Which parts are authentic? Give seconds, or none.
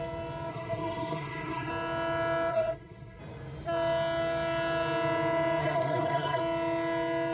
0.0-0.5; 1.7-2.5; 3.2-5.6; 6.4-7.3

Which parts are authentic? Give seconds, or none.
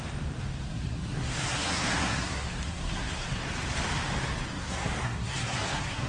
0.0-0.7; 3.4-4.5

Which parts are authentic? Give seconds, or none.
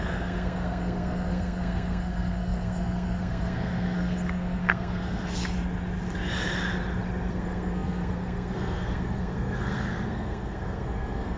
5.4-7.3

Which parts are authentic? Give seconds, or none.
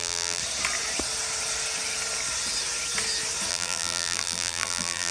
0.4-3.5